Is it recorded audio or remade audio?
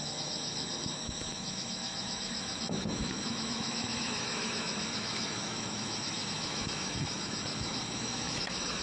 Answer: remade